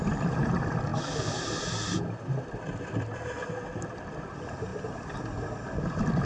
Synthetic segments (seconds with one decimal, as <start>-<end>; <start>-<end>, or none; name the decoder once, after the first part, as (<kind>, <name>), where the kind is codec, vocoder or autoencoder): 0.0-0.9 (vocoder, BigVGAN v2); 2.4-6.3